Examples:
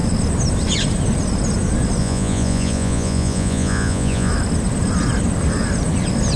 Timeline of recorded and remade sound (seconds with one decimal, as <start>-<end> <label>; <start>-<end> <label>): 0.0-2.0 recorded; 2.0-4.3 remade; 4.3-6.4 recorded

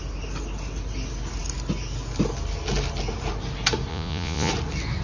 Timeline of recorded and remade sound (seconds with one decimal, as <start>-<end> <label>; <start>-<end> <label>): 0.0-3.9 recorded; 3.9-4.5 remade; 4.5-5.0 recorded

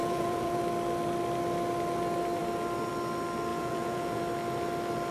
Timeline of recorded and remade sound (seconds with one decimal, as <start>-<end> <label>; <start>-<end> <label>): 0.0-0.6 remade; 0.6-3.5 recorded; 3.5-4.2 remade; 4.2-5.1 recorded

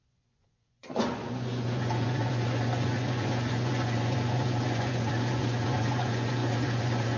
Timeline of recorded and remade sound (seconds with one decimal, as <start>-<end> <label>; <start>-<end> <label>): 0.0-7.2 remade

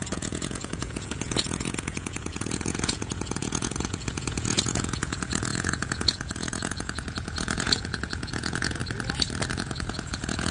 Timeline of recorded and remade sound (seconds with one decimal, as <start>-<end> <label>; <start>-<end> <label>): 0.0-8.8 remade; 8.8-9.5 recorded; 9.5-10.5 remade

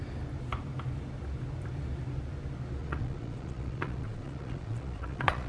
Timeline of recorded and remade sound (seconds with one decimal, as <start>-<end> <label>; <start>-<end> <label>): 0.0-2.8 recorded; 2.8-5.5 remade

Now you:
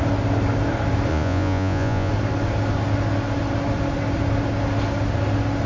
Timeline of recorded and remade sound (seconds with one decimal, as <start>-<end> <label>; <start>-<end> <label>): 0.0-1.1 recorded; 1.1-2.1 remade; 2.1-5.7 recorded

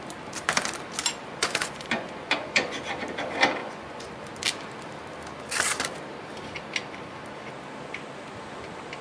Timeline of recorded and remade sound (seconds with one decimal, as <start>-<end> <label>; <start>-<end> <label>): 0.0-1.2 recorded; 1.2-2.8 remade; 2.8-3.6 recorded; 3.6-4.2 remade; 4.2-9.0 recorded